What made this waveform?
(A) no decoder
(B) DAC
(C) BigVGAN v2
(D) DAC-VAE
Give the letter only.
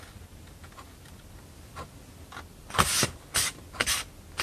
A